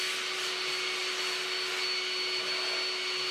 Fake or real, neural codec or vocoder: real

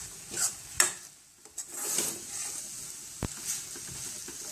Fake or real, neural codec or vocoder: real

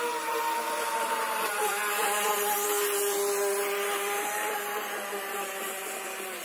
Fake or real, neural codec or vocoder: real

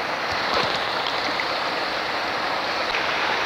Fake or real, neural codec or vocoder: real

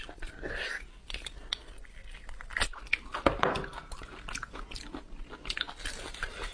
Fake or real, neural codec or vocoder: real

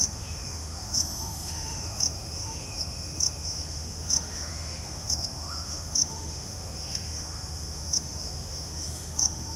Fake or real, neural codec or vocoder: fake, autoencoder, DAC-VAE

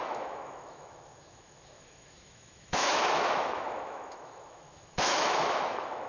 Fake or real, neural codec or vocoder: fake, autoencoder, DAC-VAE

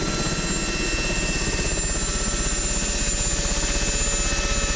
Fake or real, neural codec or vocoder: real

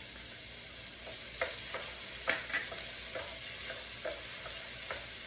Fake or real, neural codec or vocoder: real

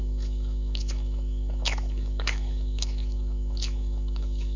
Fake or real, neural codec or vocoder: fake, autoencoder, DAC-VAE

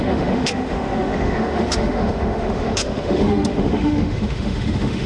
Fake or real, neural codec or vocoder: fake, autoencoder, DAC-VAE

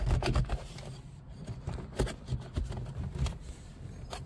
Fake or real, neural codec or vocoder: real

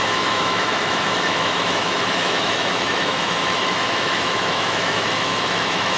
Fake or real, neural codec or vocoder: fake, autoencoder, DAC-VAE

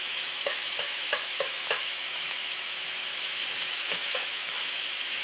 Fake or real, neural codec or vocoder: fake, autoencoder, DAC-VAE